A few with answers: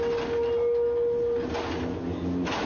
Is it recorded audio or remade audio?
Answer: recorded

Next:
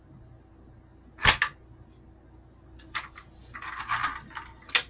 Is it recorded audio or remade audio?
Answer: recorded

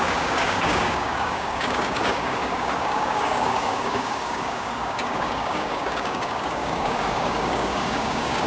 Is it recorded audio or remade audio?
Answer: remade